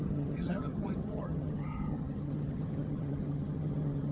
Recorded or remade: remade